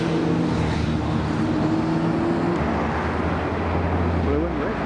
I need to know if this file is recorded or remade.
recorded